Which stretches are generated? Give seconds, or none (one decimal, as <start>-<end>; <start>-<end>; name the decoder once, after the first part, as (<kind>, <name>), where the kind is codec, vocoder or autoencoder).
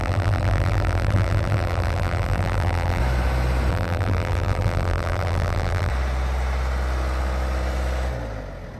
0.0-3.0 (vocoder, BigVGAN v2); 3.7-5.9